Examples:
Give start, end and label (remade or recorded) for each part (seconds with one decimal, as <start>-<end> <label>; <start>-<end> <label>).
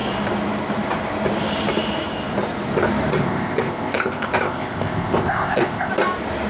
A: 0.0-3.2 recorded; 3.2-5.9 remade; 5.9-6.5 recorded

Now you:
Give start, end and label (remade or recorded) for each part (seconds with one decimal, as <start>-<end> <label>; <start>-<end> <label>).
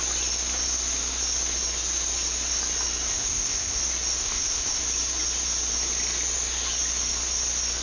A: 0.0-3.1 recorded; 3.1-3.8 remade; 3.8-4.2 recorded; 4.2-4.8 remade; 4.8-7.8 recorded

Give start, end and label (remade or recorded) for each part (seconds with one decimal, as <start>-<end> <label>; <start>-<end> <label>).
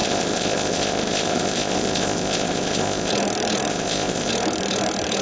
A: 0.0-3.1 remade; 3.1-3.7 recorded; 3.7-4.3 remade; 4.3-5.2 recorded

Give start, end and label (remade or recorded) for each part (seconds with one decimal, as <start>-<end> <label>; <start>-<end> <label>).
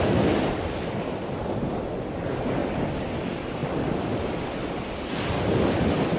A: 0.0-6.2 recorded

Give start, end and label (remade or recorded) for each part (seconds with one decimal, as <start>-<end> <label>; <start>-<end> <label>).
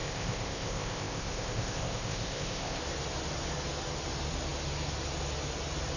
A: 0.0-2.8 remade; 2.8-6.0 recorded